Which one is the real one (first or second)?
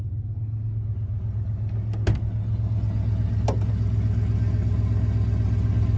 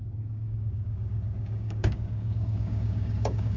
first